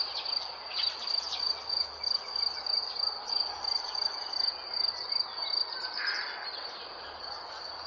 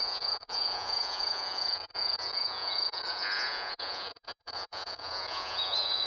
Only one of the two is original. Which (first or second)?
first